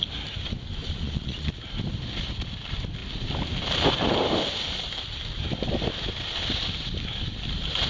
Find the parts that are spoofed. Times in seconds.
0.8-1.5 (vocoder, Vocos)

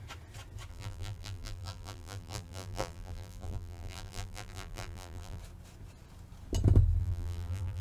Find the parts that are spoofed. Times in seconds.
0.7-5.4 (vocoder, BigVGAN v2); 7.0-7.8